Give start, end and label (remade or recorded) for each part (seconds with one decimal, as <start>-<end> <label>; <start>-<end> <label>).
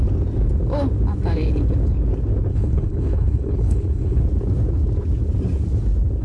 0.0-2.5 recorded; 2.5-4.2 remade; 4.2-6.2 recorded